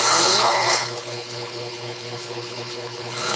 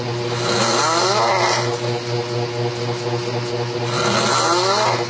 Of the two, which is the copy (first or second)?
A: first